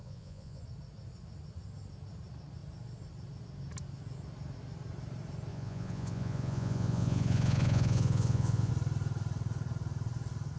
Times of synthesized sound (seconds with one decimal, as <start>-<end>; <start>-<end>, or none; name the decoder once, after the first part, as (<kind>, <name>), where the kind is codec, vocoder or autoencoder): 0.0-0.6 (vocoder, Vocos); 5.5-8.7